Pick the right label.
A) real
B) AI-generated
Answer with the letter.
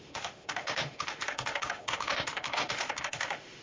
B